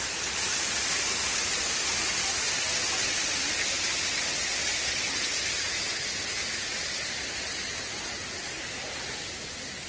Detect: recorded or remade recorded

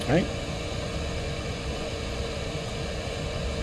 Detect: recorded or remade remade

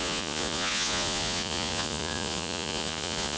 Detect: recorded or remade remade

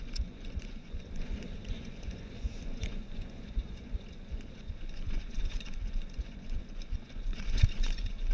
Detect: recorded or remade remade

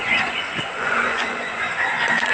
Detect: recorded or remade remade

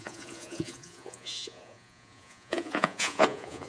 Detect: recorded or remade remade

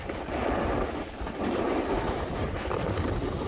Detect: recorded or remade recorded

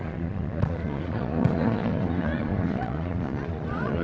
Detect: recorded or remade remade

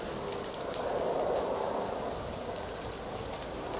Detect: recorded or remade recorded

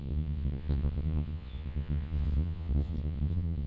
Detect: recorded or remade remade